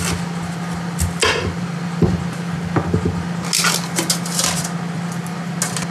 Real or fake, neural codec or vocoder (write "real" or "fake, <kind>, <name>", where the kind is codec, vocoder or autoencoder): real